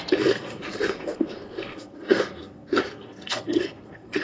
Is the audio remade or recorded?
remade